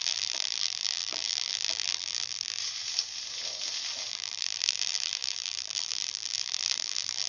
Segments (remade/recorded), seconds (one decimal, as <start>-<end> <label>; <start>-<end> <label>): 0.0-2.6 remade; 2.6-4.1 recorded; 4.1-7.3 remade